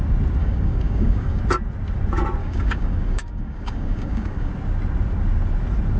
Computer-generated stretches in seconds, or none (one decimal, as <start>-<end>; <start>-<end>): 0.4-1.4; 2.4-4.5